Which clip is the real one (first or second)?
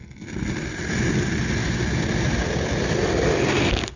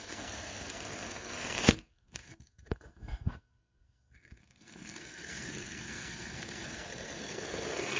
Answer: first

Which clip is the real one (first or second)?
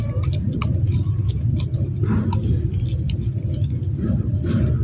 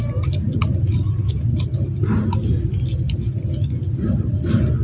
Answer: second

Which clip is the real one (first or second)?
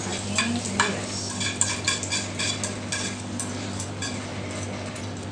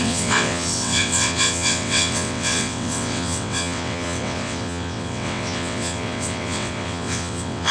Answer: first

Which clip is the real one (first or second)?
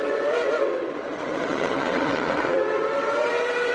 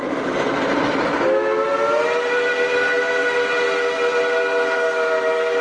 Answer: second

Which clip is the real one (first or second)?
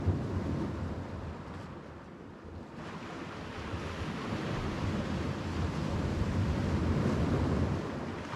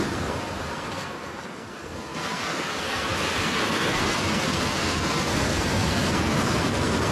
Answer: first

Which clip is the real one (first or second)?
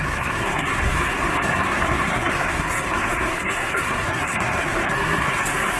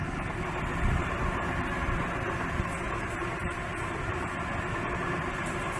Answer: second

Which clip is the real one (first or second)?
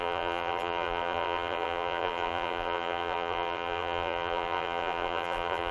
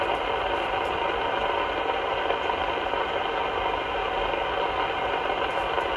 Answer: second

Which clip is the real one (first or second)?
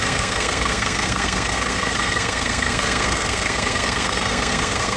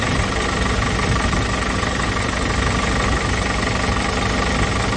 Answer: second